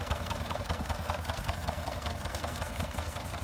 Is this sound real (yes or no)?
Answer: no